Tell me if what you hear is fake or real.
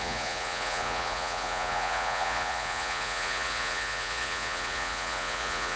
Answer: fake